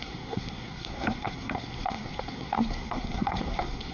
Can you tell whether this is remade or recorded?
remade